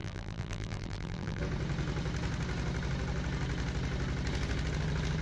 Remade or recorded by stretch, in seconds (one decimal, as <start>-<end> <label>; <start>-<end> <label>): 0.0-1.4 remade; 1.4-5.2 recorded